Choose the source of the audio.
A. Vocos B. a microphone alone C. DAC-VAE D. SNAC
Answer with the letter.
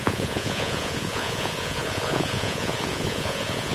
A